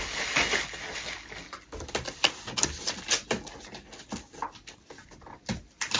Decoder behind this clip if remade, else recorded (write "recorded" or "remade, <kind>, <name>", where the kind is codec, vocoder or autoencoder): recorded